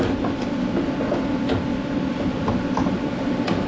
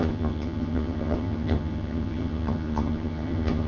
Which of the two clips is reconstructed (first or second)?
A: second